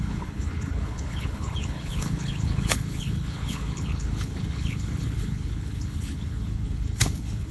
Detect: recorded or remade remade